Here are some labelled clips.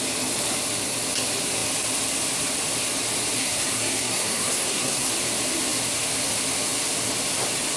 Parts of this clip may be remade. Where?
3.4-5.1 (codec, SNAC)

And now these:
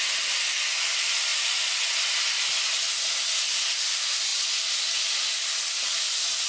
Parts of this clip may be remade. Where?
none